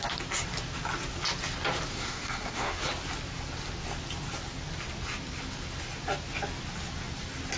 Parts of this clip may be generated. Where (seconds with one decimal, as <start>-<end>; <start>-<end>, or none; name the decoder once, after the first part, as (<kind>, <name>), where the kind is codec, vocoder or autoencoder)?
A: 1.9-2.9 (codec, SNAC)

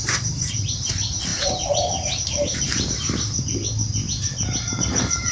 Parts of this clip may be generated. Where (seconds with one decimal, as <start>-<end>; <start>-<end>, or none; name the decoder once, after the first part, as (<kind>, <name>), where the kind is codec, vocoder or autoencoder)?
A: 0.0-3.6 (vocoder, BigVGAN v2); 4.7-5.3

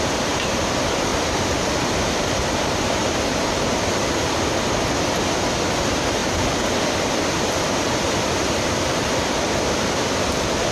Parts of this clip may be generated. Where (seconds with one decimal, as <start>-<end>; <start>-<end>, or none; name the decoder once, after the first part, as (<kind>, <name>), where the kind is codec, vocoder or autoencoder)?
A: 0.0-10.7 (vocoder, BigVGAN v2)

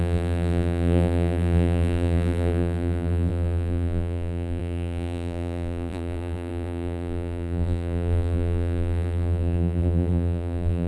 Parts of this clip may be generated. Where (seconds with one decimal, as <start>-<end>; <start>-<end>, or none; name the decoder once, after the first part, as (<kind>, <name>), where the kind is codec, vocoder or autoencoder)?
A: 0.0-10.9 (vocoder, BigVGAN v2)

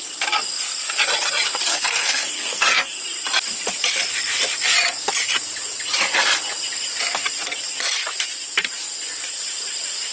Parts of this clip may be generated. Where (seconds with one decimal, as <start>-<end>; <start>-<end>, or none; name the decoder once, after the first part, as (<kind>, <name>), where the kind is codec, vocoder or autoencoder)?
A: 1.7-3.0 (codec, SNAC)

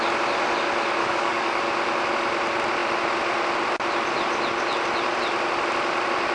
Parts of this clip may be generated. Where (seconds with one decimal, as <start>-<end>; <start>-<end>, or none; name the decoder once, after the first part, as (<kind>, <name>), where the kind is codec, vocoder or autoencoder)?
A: 1.0-1.6 (codec, DAC)